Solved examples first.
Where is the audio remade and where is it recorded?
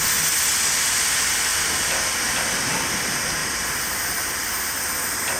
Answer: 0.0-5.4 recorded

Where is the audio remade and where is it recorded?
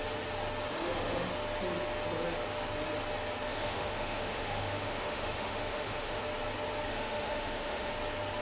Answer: 0.0-0.7 recorded; 0.7-1.3 remade; 1.3-3.5 recorded; 3.5-6.2 remade; 6.2-6.9 recorded; 6.9-7.9 remade; 7.9-8.4 recorded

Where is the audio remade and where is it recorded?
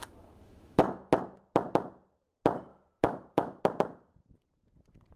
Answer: 0.0-1.2 remade; 1.2-2.7 recorded; 2.7-3.6 remade; 3.6-5.2 recorded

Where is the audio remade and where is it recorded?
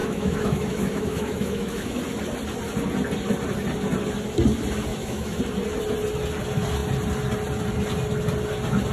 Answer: 0.0-2.0 remade; 2.0-4.9 recorded; 4.9-5.4 remade; 5.4-8.9 recorded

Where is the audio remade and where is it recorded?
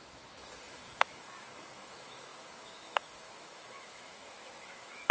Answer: 0.0-5.1 remade